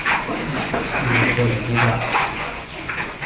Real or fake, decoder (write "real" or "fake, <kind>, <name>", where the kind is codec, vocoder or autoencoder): fake, vocoder, Vocos